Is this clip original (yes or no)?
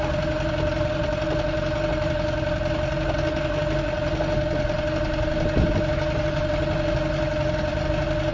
yes